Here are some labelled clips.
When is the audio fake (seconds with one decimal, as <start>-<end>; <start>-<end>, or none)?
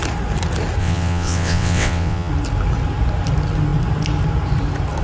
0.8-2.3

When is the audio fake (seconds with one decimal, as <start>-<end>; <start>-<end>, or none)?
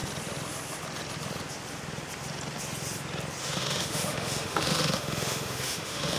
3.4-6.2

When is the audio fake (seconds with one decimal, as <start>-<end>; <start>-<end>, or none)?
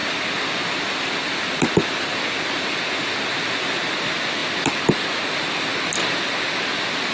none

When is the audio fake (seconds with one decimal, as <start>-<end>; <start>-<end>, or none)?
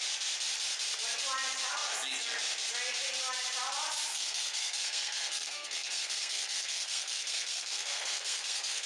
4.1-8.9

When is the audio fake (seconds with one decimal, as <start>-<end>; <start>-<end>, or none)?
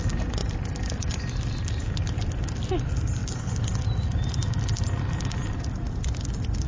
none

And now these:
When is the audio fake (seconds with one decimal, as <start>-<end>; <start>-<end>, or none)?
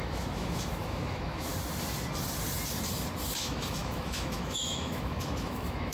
0.0-1.5; 3.4-5.9